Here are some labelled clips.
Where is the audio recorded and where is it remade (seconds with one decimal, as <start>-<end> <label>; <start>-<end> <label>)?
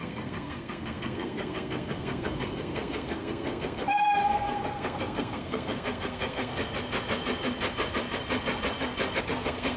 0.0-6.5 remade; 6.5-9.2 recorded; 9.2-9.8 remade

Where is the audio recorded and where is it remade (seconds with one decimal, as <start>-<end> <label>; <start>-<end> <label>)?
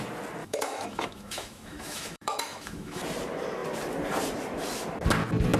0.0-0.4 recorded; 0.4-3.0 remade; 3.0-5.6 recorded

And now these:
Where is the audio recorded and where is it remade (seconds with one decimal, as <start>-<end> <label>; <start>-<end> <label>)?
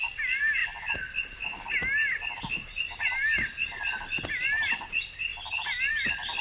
0.0-0.6 remade; 0.6-2.8 recorded; 2.8-5.3 remade; 5.3-5.9 recorded; 5.9-6.4 remade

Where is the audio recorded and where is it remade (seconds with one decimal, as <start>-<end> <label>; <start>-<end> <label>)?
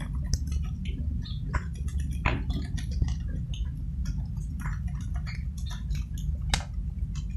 0.0-7.4 recorded